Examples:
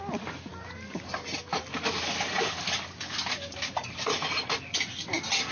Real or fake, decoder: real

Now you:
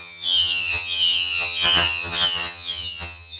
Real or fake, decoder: fake, vocoder, HiFi-GAN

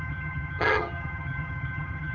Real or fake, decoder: fake, vocoder, HiFi-GAN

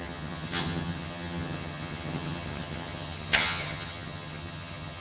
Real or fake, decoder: fake, vocoder, HiFi-GAN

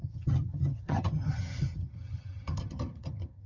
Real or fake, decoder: fake, vocoder, HiFi-GAN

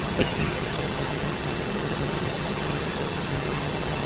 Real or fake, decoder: fake, vocoder, HiFi-GAN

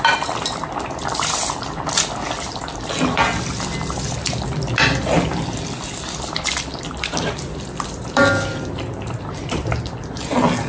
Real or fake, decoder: real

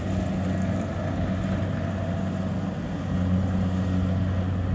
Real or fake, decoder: real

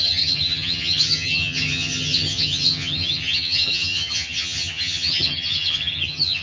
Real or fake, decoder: fake, vocoder, HiFi-GAN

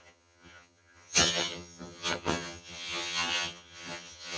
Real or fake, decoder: fake, vocoder, HiFi-GAN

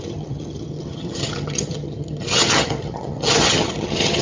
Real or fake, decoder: fake, vocoder, HiFi-GAN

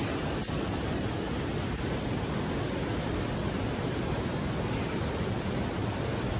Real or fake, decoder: real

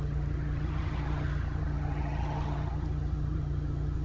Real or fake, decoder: fake, vocoder, HiFi-GAN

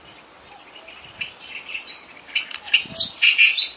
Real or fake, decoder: real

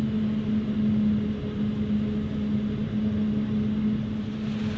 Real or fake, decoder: real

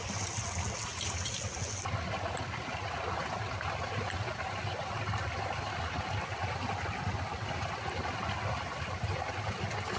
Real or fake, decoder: real